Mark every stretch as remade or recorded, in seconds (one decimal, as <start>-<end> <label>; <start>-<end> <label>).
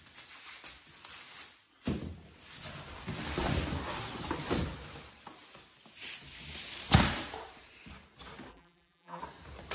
0.0-8.5 recorded; 8.5-9.2 remade; 9.2-9.7 recorded